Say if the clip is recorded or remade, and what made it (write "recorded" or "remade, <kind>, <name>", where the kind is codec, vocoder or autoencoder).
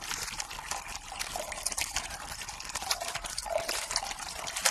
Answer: recorded